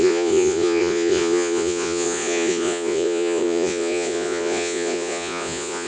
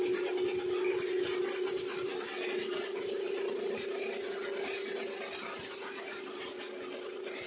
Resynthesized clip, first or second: first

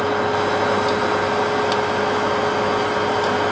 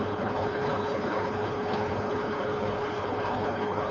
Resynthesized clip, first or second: second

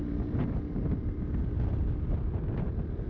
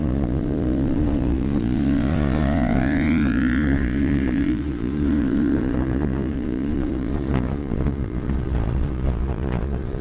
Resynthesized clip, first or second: second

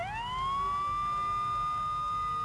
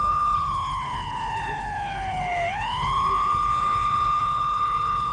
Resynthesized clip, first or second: second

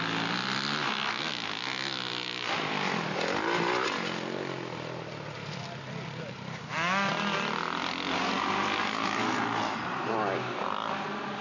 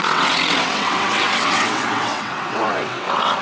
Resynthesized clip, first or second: second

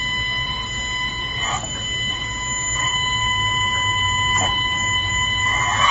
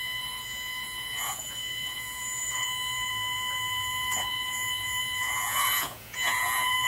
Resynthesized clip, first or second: second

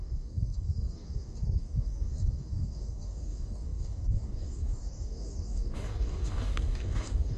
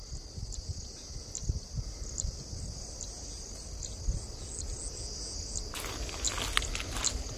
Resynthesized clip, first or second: first